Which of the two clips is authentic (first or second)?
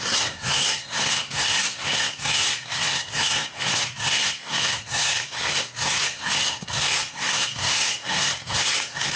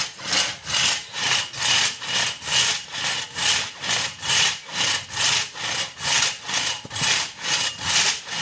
second